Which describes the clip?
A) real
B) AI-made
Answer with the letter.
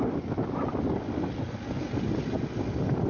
A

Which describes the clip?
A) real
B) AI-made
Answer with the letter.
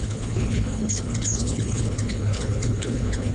B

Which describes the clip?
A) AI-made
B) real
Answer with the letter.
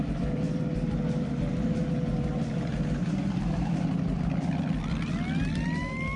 B